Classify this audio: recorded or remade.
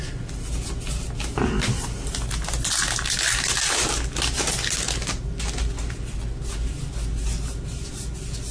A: recorded